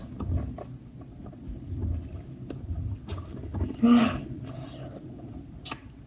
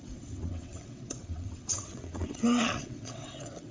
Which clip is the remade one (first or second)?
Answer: second